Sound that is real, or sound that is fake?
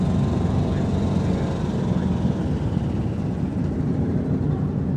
real